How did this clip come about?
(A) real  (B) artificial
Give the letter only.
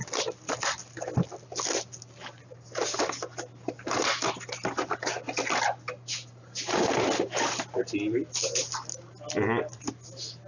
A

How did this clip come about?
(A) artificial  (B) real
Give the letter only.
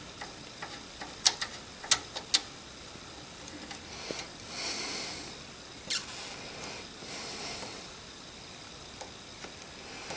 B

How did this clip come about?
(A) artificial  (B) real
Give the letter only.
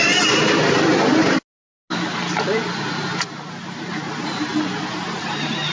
B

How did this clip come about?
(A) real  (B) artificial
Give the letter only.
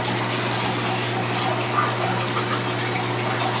A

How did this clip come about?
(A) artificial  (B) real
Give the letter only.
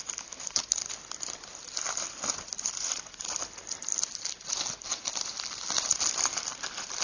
B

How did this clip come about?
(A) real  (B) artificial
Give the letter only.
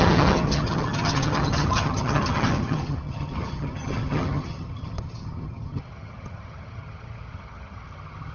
B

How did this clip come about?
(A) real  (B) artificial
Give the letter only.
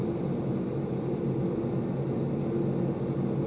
A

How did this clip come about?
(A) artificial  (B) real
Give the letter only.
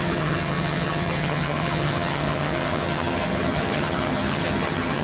A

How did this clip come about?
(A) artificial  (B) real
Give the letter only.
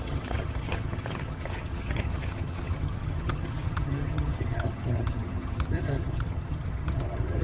A